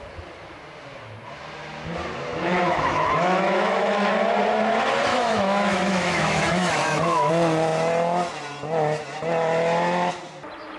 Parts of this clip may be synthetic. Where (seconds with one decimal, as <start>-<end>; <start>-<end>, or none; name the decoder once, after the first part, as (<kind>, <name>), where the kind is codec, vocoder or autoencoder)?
2.3-4.1 (autoencoder, DAC-VAE); 5.1-7.3